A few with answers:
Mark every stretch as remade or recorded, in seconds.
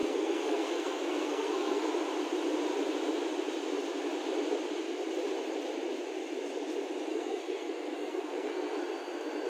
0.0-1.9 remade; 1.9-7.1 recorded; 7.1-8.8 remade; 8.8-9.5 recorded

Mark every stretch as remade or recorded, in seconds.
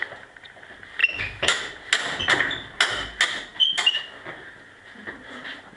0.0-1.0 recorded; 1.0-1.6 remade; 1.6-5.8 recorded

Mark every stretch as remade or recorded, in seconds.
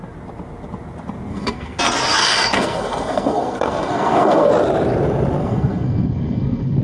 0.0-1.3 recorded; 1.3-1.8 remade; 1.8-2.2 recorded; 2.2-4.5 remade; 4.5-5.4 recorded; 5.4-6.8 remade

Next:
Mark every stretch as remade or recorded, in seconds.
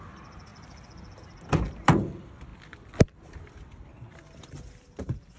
0.0-0.5 remade; 0.5-1.2 recorded; 1.2-5.4 remade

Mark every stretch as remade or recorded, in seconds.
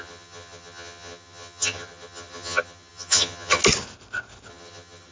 0.0-3.6 remade; 3.6-4.5 recorded; 4.5-5.1 remade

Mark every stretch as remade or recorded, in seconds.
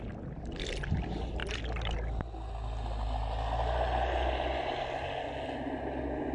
0.0-6.3 recorded